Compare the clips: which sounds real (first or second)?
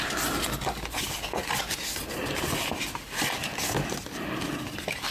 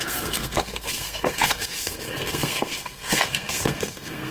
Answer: first